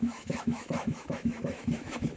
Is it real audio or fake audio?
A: fake